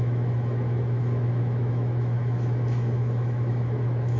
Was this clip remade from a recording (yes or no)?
yes